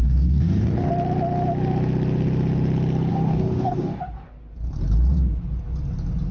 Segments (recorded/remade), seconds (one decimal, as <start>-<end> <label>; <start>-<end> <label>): 0.0-0.9 remade; 0.9-3.1 recorded; 3.1-4.0 remade; 4.0-6.3 recorded